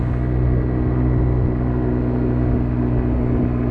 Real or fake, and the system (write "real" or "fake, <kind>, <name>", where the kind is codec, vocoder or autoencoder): real